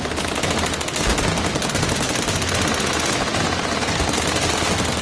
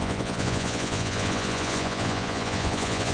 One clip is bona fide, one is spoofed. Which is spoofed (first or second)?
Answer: second